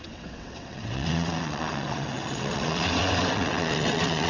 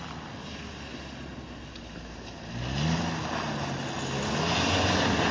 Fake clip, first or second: first